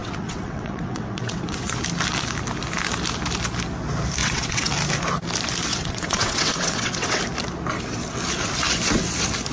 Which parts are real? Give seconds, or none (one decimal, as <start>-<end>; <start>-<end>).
1.8-4.2; 4.7-5.7; 7.2-9.5